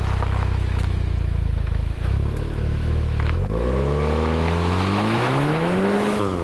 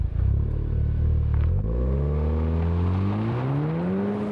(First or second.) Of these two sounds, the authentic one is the second